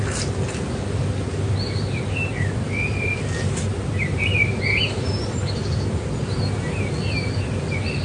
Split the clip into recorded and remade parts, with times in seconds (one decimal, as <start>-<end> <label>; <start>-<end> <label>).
0.0-8.0 recorded